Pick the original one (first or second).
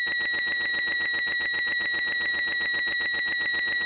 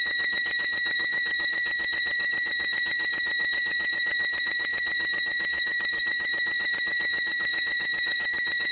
first